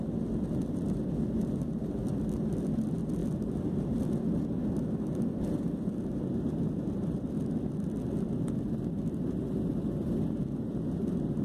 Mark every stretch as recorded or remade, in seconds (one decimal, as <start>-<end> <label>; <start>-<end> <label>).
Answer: 0.0-11.4 recorded